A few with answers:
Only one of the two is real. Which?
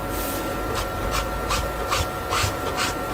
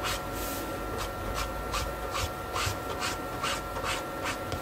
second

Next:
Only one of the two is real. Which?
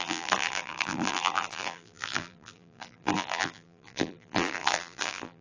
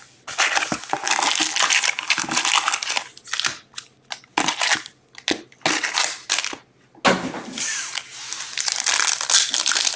second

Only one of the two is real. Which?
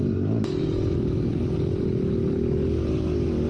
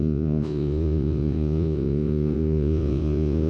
first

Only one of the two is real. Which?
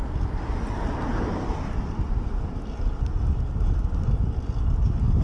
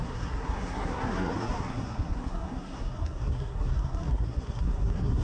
first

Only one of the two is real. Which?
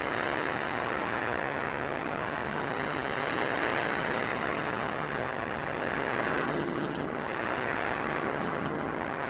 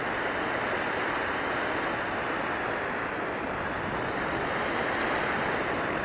second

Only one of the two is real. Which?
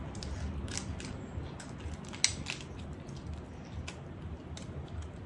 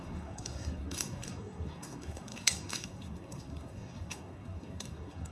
first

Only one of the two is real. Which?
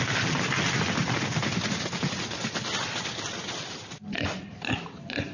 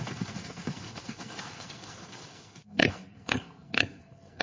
first